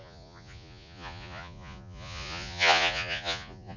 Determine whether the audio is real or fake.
fake